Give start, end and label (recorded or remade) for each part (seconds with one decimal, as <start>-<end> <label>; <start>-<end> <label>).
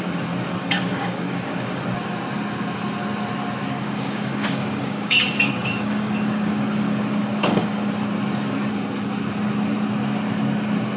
0.0-0.6 recorded; 0.6-1.8 remade; 1.8-3.7 recorded; 3.7-7.9 remade; 7.9-11.0 recorded